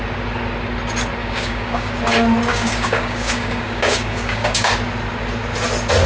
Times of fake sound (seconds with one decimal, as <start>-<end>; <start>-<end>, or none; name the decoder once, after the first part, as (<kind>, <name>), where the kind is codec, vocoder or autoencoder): 1.2-1.9 (codec, DAC); 2.5-4.7